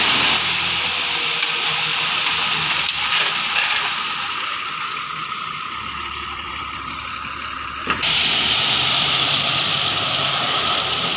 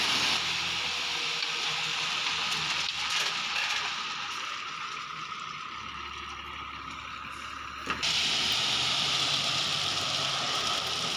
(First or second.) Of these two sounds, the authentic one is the second